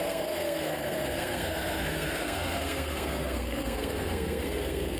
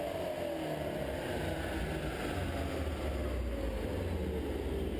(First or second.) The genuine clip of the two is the second